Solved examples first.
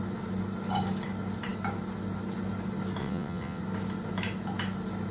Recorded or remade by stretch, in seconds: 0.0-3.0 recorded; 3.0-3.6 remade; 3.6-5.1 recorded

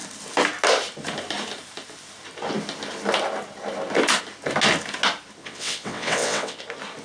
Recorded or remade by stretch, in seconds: 0.0-5.4 recorded; 5.4-6.6 remade; 6.6-7.0 recorded

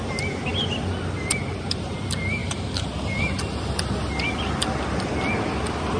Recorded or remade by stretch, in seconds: 0.0-6.0 recorded

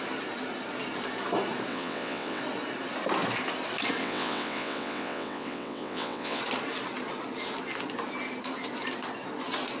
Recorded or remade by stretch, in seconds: 0.0-1.7 recorded; 1.7-2.4 remade; 2.4-4.0 recorded; 4.0-6.4 remade; 6.4-9.8 recorded

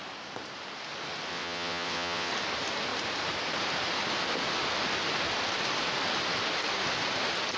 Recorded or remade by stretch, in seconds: 0.0-1.3 recorded; 1.3-2.3 remade; 2.3-7.6 recorded

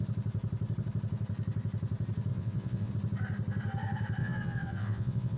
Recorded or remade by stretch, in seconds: 0.0-2.3 recorded; 2.3-2.9 remade; 2.9-4.2 recorded; 4.2-5.4 remade

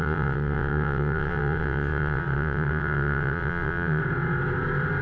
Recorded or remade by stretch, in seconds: 0.0-4.0 remade; 4.0-5.0 recorded